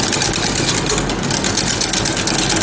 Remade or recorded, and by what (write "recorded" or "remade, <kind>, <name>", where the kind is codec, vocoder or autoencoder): recorded